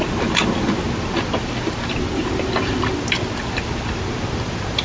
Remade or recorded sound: recorded